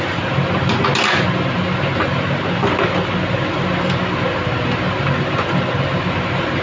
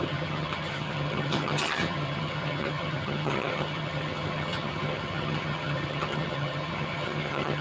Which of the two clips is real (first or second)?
first